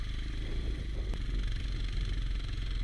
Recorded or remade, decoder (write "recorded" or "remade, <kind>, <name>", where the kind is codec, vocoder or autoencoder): recorded